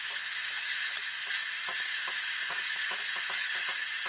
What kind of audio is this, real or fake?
fake